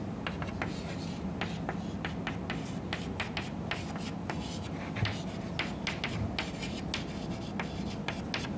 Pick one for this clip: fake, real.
real